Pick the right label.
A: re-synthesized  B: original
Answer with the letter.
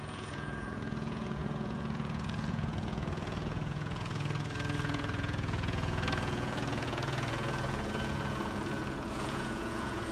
A